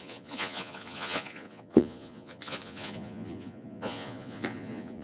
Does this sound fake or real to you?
fake